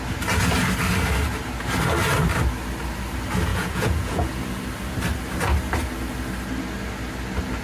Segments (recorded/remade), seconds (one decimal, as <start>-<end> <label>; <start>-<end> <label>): 0.0-3.5 recorded; 3.5-4.4 remade; 4.4-7.6 recorded